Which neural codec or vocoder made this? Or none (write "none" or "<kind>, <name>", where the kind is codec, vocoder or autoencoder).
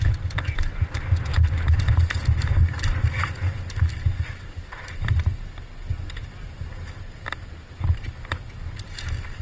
none